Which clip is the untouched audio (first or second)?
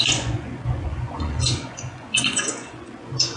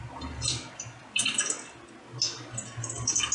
second